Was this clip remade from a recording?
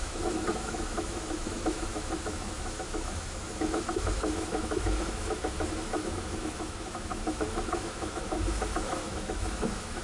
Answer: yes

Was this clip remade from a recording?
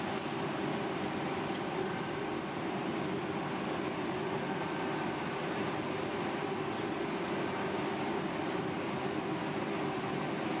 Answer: no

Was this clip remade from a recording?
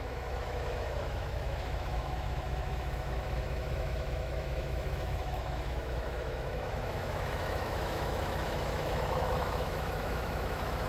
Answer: yes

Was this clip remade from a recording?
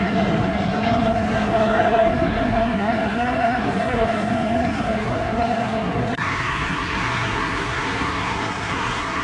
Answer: yes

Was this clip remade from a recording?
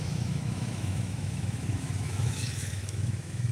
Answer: yes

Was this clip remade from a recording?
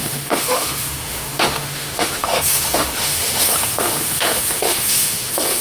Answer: yes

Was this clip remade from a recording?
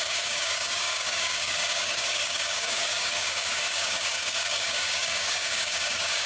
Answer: yes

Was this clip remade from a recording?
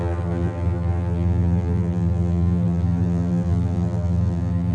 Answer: yes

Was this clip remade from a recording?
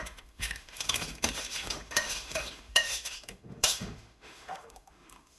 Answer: yes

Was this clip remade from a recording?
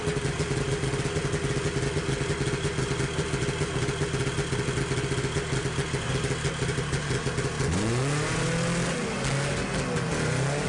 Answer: no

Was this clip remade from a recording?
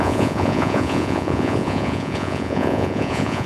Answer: yes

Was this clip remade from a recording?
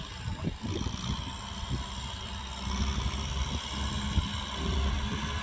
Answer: no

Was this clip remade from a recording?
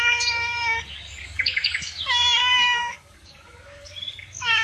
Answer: yes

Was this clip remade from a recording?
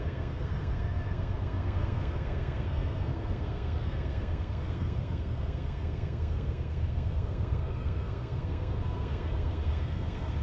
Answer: yes